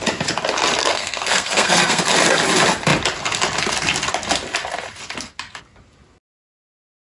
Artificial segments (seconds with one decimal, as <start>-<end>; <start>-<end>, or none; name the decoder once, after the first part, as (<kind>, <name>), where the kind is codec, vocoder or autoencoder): 0.8-2.0 (codec, SNAC)